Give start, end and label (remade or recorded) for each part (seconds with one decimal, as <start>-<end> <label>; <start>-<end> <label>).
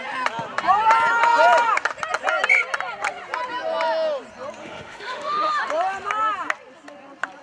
0.0-4.6 recorded; 4.6-5.6 remade; 5.6-7.4 recorded